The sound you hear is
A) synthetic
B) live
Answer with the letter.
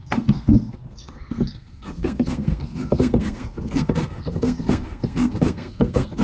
A